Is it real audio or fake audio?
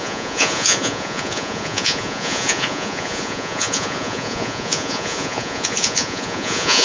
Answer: fake